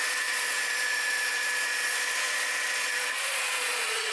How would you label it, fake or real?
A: fake